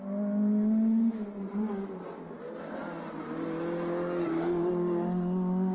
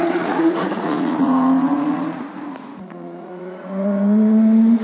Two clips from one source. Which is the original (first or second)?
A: first